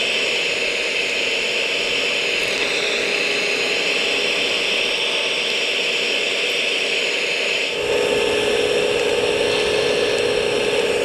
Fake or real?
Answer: real